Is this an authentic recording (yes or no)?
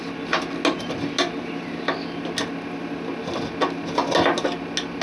yes